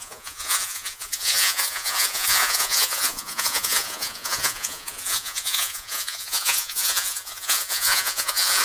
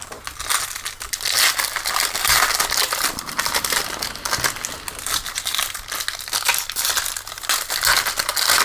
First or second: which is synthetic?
first